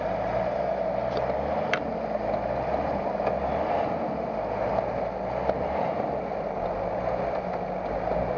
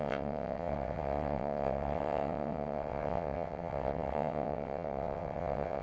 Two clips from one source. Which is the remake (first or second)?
second